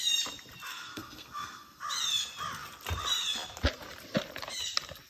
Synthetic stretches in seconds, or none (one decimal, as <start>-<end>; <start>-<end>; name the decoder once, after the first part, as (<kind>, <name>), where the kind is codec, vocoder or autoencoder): 0.7-1.8 (codec, SNAC)